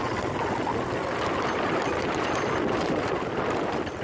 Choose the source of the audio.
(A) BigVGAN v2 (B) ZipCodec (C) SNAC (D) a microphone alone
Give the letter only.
D